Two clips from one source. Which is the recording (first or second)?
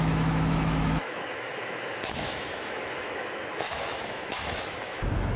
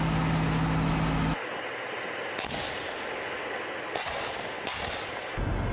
second